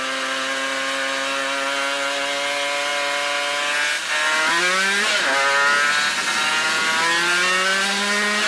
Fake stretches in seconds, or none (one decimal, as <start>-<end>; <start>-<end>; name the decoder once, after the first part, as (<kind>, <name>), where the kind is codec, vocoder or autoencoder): none